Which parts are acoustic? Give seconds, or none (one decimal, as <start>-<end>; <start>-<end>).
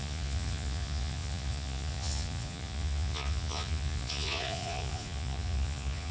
none